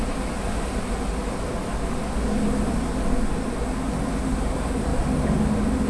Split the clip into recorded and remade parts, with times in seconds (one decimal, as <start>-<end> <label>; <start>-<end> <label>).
0.0-0.4 recorded; 0.4-1.1 remade; 1.1-4.9 recorded; 4.9-5.9 remade